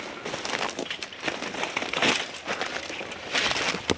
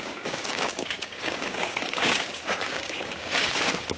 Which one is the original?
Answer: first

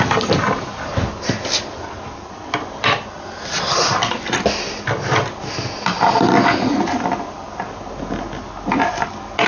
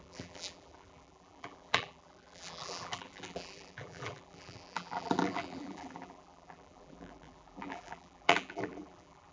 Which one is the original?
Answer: first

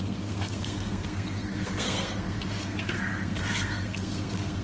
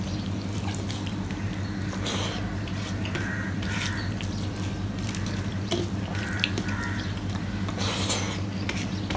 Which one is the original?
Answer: second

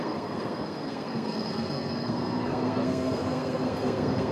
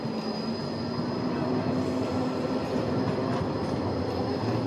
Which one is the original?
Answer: second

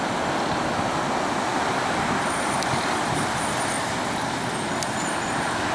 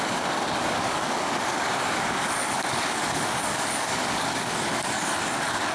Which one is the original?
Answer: first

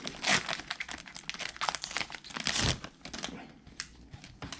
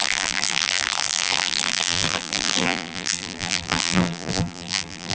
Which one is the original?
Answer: first